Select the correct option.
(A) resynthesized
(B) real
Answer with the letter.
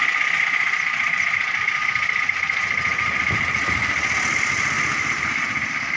B